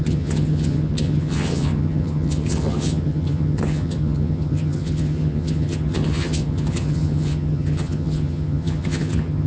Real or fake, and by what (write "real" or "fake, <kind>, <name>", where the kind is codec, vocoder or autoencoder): fake, vocoder, HiFi-GAN